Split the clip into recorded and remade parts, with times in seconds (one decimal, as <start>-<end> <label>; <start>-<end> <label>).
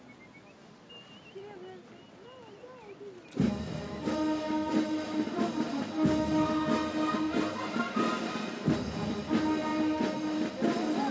0.0-4.7 recorded; 4.7-5.7 remade; 5.7-6.9 recorded; 6.9-7.8 remade; 7.8-11.1 recorded